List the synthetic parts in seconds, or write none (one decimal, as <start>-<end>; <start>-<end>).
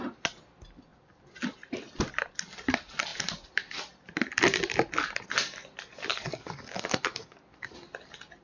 6.1-7.7